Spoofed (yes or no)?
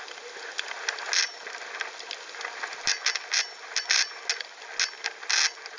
no